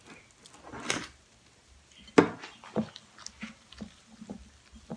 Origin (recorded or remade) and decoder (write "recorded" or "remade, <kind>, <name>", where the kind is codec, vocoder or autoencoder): recorded